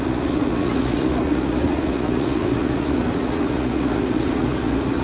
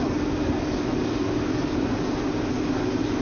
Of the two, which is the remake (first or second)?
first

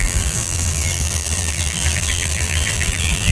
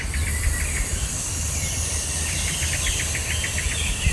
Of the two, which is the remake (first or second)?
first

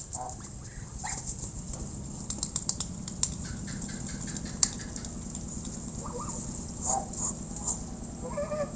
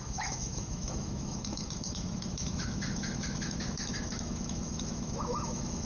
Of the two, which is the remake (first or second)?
second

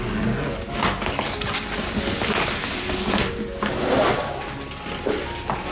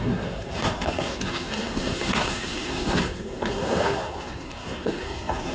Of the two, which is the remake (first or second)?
second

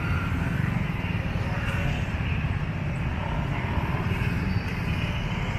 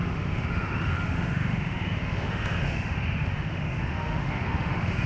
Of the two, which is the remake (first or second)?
second